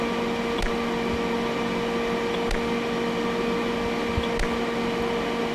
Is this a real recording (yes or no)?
yes